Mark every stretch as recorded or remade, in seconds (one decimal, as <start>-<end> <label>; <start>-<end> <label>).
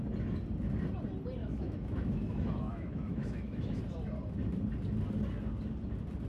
0.0-1.4 recorded; 1.4-3.8 remade; 3.8-6.3 recorded